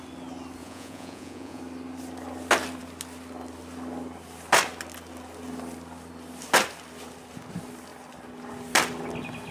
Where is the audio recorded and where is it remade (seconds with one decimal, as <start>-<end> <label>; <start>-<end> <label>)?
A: 0.0-0.6 recorded; 0.6-1.6 remade; 1.6-9.5 recorded